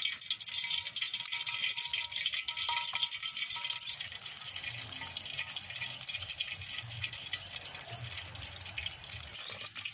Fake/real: real